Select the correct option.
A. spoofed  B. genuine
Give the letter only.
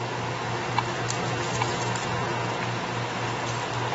B